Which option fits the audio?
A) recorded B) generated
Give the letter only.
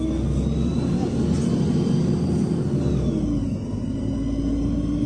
A